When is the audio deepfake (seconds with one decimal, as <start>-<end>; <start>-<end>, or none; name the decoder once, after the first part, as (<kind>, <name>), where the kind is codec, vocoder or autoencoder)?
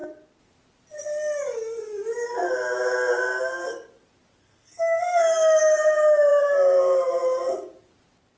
4.4-5.2 (codec, SNAC)